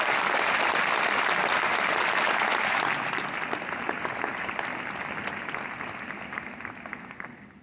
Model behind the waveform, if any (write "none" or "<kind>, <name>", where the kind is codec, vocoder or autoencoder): none